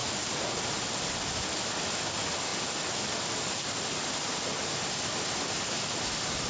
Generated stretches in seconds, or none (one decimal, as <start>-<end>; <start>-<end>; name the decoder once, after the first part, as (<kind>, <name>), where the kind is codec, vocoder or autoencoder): none